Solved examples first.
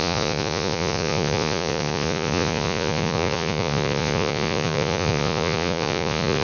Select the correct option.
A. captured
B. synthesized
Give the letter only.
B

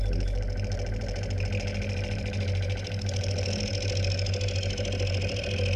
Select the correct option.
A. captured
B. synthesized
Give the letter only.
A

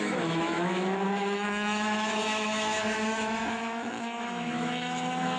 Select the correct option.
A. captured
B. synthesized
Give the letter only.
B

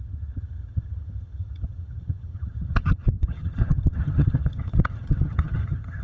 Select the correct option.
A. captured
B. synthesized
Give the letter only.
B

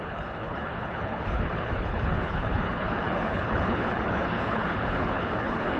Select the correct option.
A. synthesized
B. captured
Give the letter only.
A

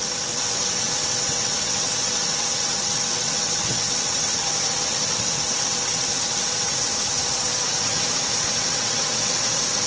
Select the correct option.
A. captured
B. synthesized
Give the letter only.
B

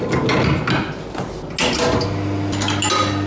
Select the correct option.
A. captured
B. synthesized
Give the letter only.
A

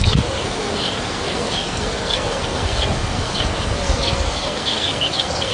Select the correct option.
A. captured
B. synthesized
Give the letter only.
B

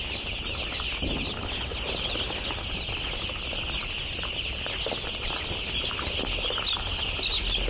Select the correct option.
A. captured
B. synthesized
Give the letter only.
A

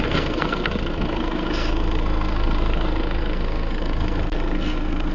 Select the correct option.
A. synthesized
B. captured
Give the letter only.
A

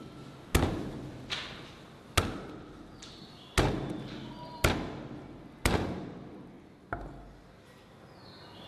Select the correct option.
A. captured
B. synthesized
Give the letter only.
A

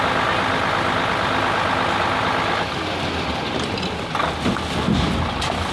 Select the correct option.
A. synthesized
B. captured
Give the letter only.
B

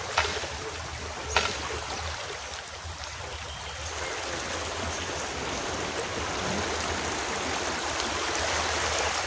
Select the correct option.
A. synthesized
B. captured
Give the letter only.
B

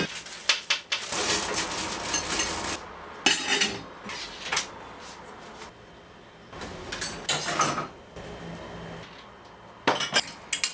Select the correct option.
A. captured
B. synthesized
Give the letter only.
A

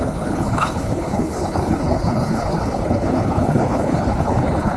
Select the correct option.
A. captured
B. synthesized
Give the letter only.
B